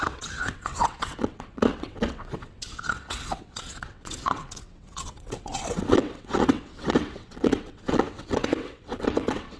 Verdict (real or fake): fake